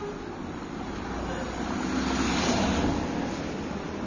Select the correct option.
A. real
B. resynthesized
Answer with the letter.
A